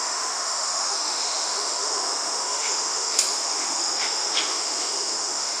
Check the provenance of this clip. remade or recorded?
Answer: remade